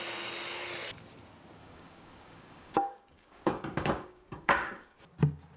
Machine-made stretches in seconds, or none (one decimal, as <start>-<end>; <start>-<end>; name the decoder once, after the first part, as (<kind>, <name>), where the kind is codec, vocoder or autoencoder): 1.6-5.0 (codec, DAC)